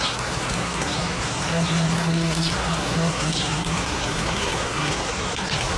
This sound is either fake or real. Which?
fake